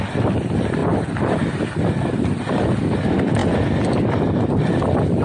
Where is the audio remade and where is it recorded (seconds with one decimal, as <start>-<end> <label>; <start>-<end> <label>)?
0.0-5.2 recorded